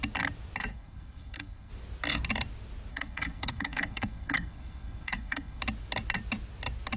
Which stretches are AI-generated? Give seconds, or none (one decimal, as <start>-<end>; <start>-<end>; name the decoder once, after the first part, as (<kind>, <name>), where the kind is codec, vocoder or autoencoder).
0.7-1.7 (codec, SNAC); 2.9-5.6